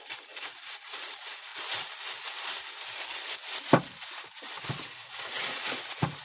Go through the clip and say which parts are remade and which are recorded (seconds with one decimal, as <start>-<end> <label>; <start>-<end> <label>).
0.0-1.5 remade; 1.5-5.2 recorded; 5.2-6.2 remade